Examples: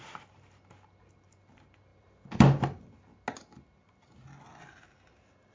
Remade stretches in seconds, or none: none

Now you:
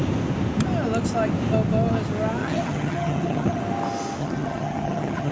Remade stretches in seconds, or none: 2.4-3.6 (vocoder, HiFi-GAN); 4.2-5.3

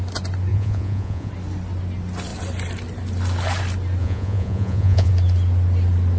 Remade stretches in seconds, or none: 0.5-1.3 (vocoder, Vocos); 4.0-5.1

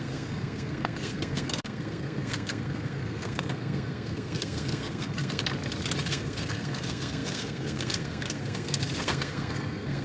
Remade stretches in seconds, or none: 0.0-5.4 (codec, SNAC); 6.1-10.0

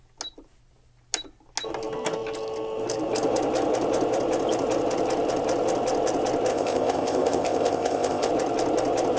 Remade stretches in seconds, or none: 6.5-8.3 (codec, ZipCodec)